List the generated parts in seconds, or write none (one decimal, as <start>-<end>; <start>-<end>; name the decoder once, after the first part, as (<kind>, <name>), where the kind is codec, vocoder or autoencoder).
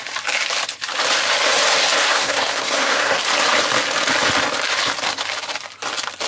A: 2.0-3.2 (codec, SNAC)